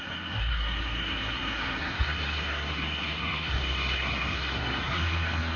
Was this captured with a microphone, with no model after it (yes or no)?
no